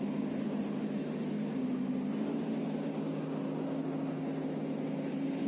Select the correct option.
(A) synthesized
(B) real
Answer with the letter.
B